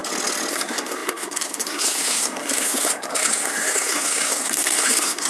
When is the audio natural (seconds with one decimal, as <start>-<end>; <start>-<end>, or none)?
0.0-0.5